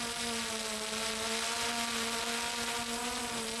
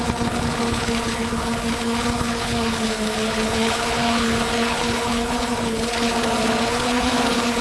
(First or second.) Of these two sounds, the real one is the first